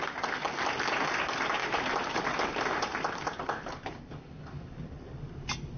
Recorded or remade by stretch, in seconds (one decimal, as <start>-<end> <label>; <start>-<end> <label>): 0.0-1.6 recorded; 1.6-4.8 remade; 4.8-5.8 recorded